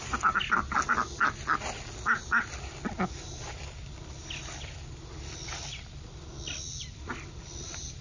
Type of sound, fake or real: real